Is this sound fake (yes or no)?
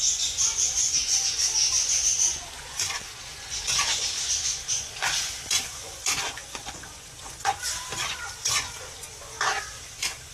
yes